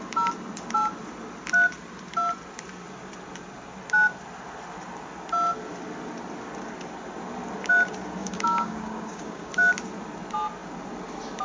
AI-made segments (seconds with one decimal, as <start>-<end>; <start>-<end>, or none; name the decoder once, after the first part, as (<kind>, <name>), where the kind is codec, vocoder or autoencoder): 8.2-9.5 (codec, DAC)